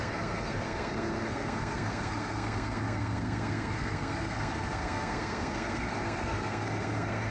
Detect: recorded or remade remade